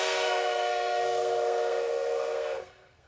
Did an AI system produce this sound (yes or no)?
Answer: yes